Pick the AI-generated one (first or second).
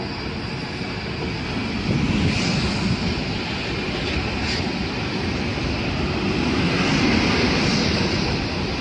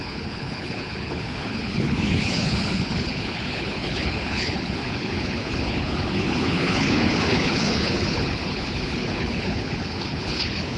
second